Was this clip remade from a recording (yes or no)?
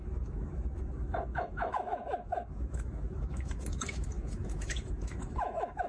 yes